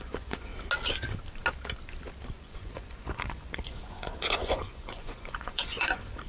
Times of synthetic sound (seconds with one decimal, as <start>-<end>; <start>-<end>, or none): 0.0-0.5; 2.4-6.3